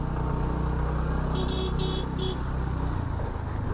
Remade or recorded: recorded